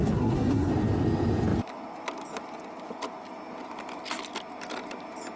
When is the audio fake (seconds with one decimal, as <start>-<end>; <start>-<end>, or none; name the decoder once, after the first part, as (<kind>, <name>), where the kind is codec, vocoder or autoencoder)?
0.0-0.7 (codec, SNAC)